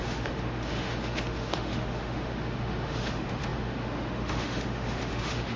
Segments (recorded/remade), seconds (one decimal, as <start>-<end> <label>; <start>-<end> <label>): 0.0-5.6 remade